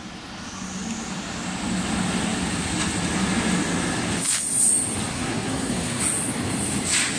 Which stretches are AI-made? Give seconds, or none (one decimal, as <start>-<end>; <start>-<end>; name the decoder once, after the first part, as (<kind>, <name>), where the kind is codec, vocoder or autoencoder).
5.1-6.0 (codec, SNAC)